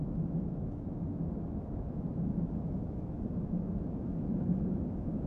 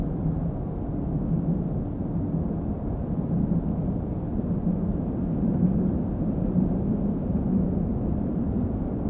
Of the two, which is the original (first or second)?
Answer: second